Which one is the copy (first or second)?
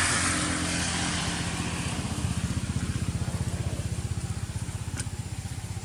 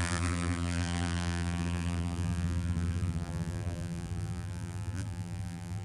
second